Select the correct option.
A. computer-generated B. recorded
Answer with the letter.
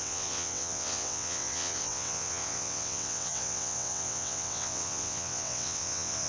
A